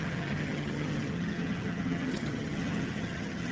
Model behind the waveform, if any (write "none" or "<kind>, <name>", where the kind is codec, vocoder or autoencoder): vocoder, HiFi-GAN